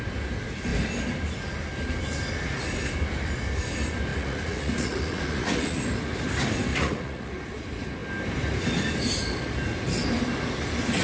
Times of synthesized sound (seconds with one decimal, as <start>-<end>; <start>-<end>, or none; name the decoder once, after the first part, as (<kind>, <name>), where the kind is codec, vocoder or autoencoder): 4.1-5.8 (vocoder, Vocos); 6.7-7.3